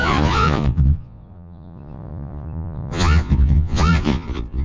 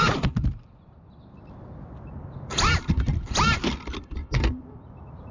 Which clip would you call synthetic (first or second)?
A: first